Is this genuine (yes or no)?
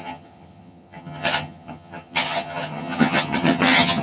no